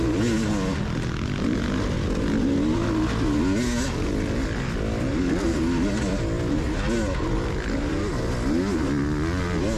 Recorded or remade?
recorded